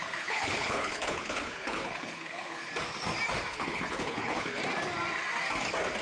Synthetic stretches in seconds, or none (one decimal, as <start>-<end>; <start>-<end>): 0.0-2.7; 3.5-4.6